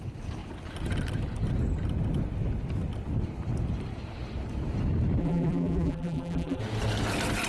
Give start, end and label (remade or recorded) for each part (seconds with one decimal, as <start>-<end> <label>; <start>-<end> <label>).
0.0-5.2 recorded; 5.2-6.6 remade; 6.6-7.5 recorded

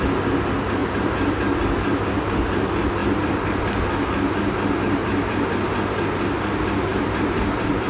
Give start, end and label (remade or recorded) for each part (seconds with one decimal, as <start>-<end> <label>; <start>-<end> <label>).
0.0-0.8 recorded; 0.8-1.6 remade; 1.6-3.0 recorded; 3.0-3.6 remade; 3.6-5.0 recorded; 5.0-5.5 remade; 5.5-6.9 recorded; 6.9-7.9 remade

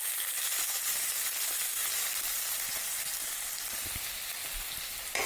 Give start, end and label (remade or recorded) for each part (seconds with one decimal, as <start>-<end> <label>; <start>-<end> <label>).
0.0-1.8 recorded; 1.8-3.1 remade; 3.1-5.3 recorded

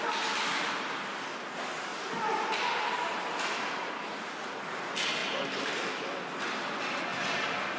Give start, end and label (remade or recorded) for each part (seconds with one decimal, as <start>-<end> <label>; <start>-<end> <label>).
0.0-1.9 recorded; 1.9-3.7 remade; 3.7-7.8 recorded

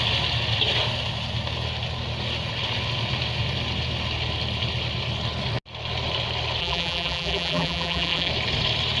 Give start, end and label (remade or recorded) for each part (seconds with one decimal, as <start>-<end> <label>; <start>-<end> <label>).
0.0-6.6 recorded; 6.6-8.3 remade; 8.3-9.0 recorded